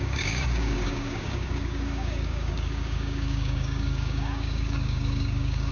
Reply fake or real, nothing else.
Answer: fake